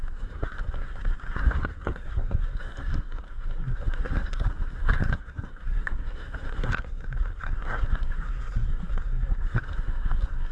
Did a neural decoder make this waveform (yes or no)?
yes